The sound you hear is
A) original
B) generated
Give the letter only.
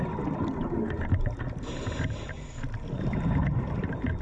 A